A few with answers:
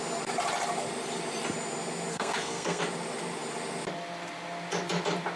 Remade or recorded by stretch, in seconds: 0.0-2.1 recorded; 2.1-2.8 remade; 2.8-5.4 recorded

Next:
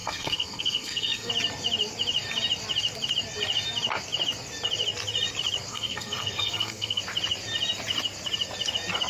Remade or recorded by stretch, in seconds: 0.0-1.3 remade; 1.3-5.7 recorded; 5.7-7.0 remade; 7.0-9.1 recorded

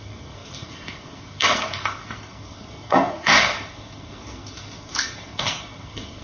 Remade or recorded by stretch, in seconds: 0.0-6.2 remade